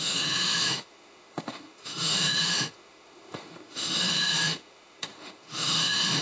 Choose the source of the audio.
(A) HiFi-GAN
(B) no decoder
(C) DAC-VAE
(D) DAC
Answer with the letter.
C